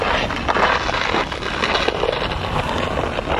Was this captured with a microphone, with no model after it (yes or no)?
yes